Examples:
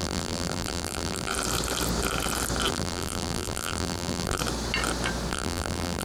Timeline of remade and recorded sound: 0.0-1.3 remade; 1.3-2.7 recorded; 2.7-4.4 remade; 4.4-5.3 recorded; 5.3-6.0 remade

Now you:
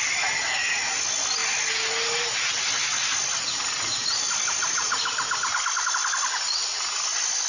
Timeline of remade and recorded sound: 0.0-7.5 recorded

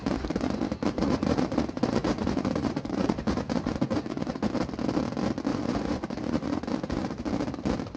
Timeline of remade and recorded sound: 0.0-4.4 remade; 4.4-5.5 recorded; 5.5-7.2 remade; 7.2-8.0 recorded

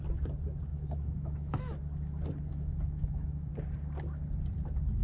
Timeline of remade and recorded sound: 0.0-0.7 recorded; 0.7-1.8 remade; 1.8-2.5 recorded; 2.5-3.5 remade; 3.5-5.0 recorded